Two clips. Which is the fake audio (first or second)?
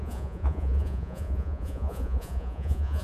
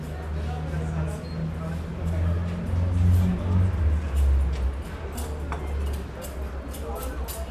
first